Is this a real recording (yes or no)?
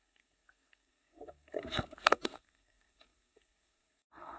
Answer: no